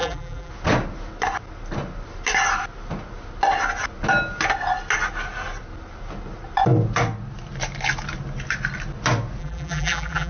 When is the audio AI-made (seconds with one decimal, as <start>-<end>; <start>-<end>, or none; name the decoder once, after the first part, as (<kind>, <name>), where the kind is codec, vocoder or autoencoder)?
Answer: 0.0-0.5 (vocoder, BigVGAN v2); 9.4-10.3